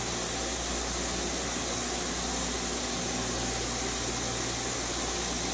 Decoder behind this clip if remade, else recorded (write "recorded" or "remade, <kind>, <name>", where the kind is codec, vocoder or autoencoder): recorded